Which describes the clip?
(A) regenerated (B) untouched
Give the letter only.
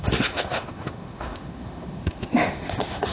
A